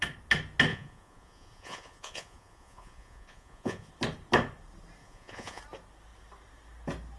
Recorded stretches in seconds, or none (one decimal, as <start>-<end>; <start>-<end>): 0.0-0.7; 3.9-5.0; 5.6-7.2